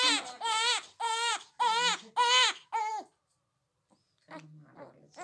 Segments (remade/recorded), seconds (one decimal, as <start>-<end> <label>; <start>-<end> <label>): 0.0-5.2 recorded